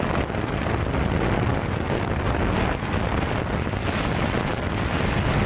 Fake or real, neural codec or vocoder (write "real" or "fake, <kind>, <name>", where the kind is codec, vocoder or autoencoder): real